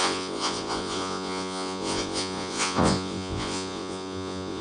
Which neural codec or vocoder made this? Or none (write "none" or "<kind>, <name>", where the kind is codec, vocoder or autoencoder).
vocoder, Vocos